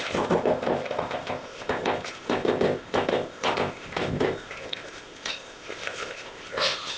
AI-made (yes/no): yes